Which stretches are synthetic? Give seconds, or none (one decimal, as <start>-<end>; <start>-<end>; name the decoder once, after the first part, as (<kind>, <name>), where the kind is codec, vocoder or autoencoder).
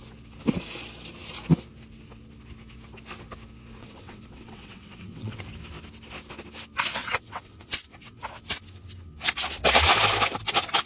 3.8-5.4 (vocoder, WaveNeXt); 7.0-8.2